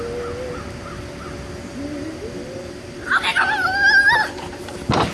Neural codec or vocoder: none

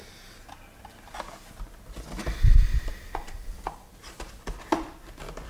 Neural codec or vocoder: none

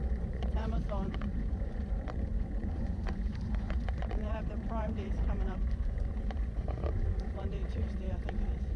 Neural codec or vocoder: vocoder, Vocos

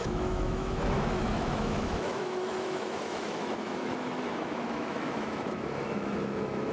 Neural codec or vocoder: autoencoder, DAC-VAE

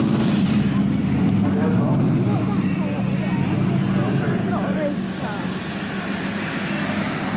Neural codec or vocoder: none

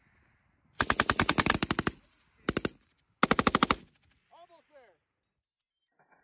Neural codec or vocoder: none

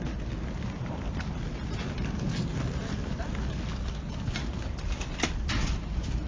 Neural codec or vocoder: none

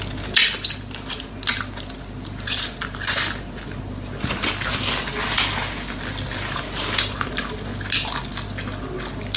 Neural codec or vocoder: none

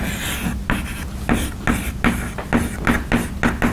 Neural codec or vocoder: none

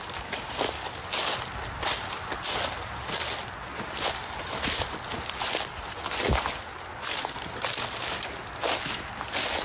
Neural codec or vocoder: none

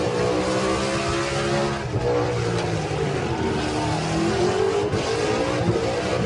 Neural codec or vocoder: none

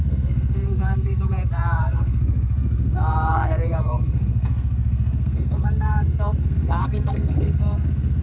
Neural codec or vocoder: codec, SNAC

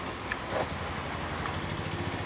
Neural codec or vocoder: none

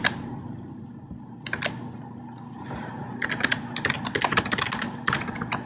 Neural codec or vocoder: none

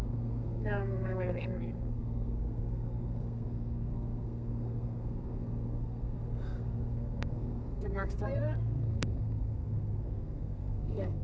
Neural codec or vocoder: codec, SNAC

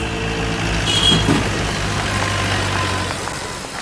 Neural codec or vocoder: none